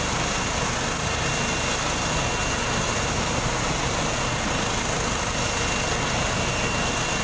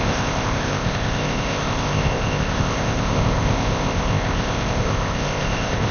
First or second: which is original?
first